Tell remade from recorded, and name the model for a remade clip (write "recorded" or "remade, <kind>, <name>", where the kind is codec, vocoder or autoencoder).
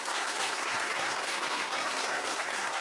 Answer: remade, codec, SNAC